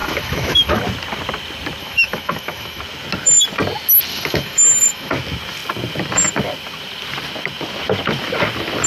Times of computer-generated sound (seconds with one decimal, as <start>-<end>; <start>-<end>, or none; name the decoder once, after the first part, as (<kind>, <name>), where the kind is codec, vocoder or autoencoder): 0.0-0.8 (autoencoder, DAC-VAE); 1.8-2.8; 4.1-5.1